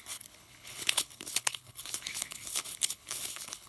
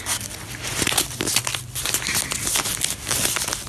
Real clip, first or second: second